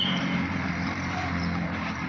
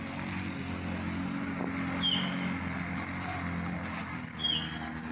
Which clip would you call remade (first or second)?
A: first